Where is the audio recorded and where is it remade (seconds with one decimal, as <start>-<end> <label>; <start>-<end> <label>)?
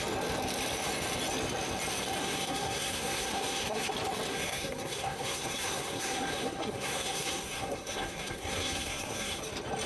0.0-2.2 recorded; 2.2-3.9 remade; 3.9-4.3 recorded; 4.3-9.4 remade; 9.4-9.9 recorded